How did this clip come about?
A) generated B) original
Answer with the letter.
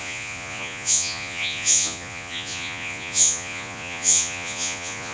A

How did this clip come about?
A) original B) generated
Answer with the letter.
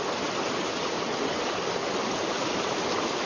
A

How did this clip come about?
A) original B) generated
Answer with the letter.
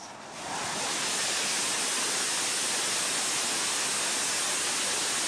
A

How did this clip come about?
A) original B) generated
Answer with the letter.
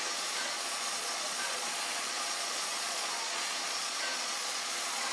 B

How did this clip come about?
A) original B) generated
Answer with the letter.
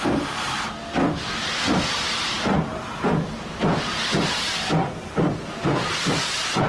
A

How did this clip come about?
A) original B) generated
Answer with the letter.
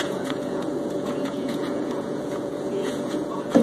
B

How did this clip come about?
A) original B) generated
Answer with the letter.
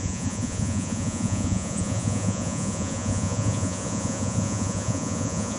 B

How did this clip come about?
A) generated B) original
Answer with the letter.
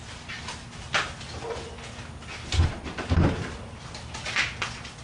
B